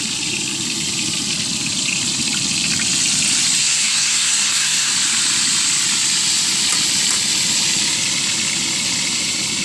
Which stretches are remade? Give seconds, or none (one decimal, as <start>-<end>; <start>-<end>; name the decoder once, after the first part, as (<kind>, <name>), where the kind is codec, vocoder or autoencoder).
3.6-4.9 (codec, SNAC)